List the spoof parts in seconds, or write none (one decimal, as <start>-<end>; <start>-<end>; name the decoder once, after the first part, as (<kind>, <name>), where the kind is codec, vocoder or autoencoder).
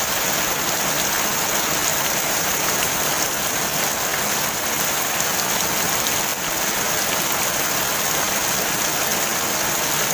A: 1.9-2.9 (vocoder, BigVGAN v2)